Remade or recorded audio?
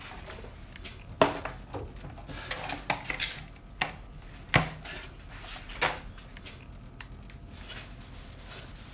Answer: recorded